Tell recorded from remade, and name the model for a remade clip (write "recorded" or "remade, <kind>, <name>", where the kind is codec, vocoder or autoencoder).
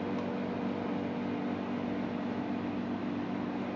recorded